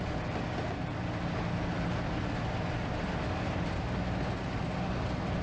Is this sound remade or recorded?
recorded